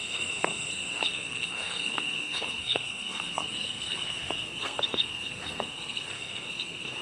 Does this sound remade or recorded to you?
remade